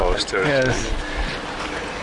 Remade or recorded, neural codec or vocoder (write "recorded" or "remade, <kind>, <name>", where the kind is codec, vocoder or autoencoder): recorded